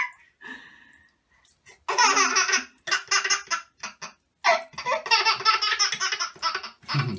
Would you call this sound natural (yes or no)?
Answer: yes